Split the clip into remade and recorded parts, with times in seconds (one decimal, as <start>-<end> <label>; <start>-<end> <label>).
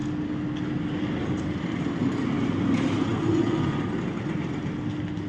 0.0-3.1 recorded; 3.1-3.8 remade; 3.8-5.3 recorded